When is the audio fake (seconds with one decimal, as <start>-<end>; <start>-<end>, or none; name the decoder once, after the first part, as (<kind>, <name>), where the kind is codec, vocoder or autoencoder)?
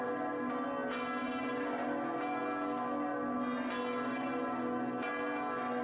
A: none